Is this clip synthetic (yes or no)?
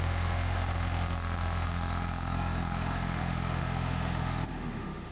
yes